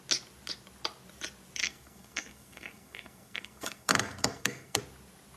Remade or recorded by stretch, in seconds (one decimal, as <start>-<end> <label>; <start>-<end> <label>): 0.0-1.6 recorded; 1.6-4.8 remade; 4.8-5.4 recorded